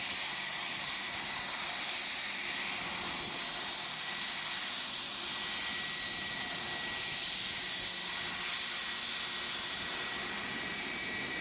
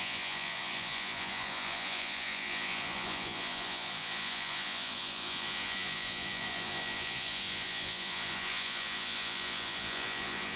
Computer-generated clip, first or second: second